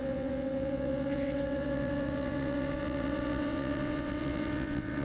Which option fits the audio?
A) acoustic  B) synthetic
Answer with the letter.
B